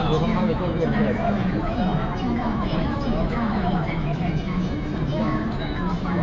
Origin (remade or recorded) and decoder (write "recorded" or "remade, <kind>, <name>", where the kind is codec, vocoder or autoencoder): remade, autoencoder, DAC-VAE